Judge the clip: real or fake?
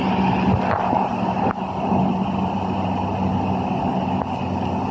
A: real